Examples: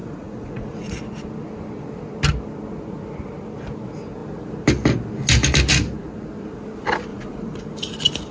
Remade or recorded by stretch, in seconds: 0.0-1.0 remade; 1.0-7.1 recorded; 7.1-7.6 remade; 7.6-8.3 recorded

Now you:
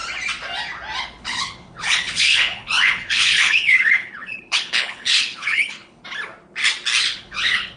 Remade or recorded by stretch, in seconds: 0.0-1.0 recorded; 1.0-6.0 remade; 6.0-7.0 recorded; 7.0-7.8 remade

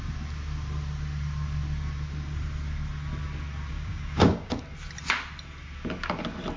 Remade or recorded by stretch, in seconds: 0.0-3.7 recorded; 3.7-4.6 remade; 4.6-6.6 recorded

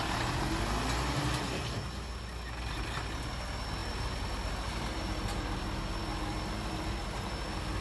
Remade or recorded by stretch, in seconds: 0.0-7.8 recorded

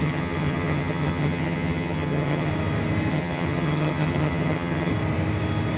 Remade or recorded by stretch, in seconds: 0.0-2.5 remade; 2.5-3.1 recorded; 3.1-4.9 remade; 4.9-5.8 recorded

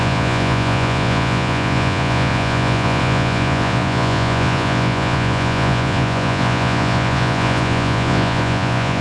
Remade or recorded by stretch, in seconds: 0.0-9.0 remade